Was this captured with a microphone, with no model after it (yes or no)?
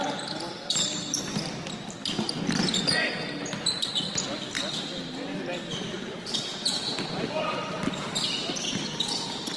no